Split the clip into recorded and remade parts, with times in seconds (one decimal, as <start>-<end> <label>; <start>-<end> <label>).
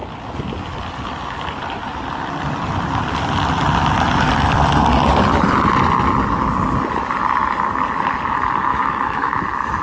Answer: 0.0-8.7 recorded; 8.7-9.4 remade; 9.4-9.8 recorded